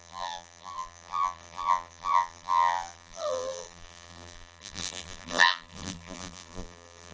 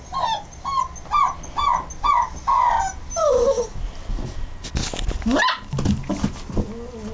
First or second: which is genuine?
second